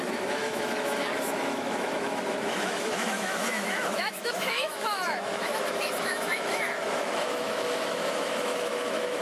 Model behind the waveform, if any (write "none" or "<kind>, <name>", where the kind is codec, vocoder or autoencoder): autoencoder, DAC-VAE